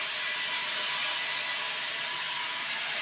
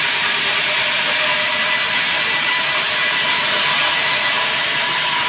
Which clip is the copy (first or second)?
second